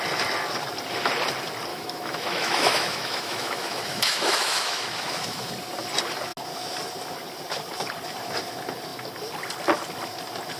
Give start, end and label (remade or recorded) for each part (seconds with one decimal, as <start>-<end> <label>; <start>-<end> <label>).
0.0-1.7 recorded; 1.7-5.5 remade; 5.5-10.6 recorded